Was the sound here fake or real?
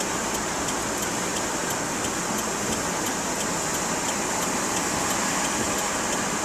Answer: real